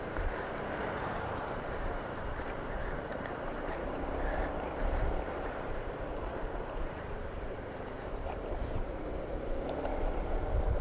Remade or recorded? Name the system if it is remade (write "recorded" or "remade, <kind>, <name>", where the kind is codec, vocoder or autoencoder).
remade, vocoder, BigVGAN v2